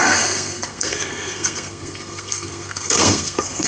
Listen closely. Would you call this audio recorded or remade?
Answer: remade